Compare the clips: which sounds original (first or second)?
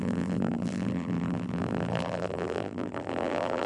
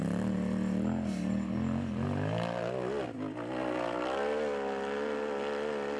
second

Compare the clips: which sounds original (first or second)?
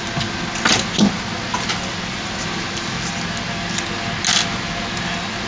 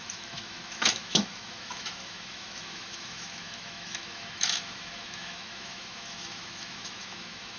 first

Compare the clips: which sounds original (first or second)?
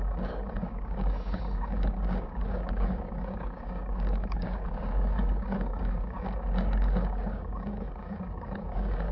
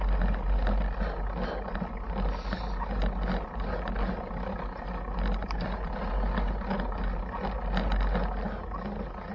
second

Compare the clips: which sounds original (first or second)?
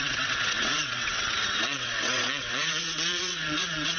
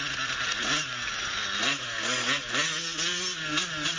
second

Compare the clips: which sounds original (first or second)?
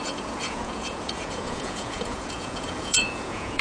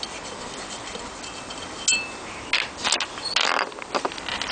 second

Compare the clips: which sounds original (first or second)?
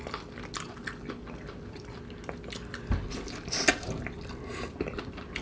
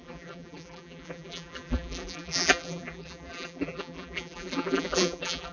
first